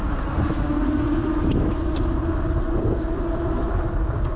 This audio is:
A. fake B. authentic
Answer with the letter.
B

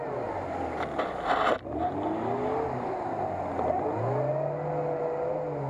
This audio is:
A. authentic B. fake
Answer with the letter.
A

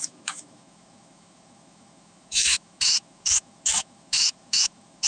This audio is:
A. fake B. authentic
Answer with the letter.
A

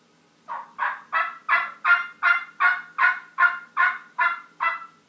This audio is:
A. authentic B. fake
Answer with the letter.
A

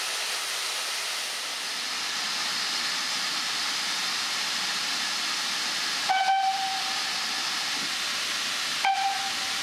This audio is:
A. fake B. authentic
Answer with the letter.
B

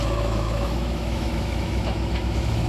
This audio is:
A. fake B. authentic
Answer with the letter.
A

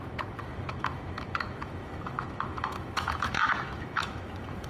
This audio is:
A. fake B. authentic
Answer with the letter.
A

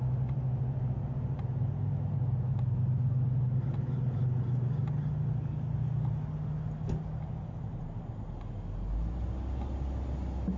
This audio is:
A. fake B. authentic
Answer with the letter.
B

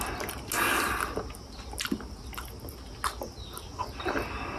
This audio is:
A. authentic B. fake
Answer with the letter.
A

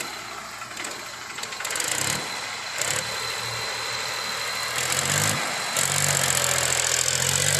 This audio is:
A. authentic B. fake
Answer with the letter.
A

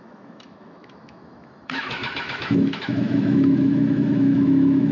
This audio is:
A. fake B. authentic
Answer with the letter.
A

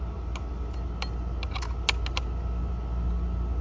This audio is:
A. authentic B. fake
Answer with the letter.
A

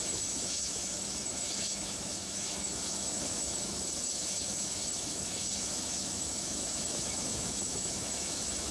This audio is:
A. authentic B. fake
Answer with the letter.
B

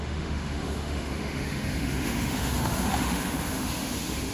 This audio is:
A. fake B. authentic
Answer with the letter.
A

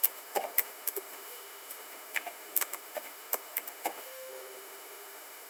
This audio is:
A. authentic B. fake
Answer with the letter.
B